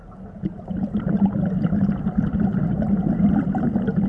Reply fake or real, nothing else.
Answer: real